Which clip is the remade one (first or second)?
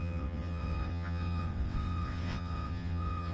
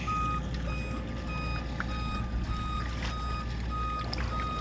first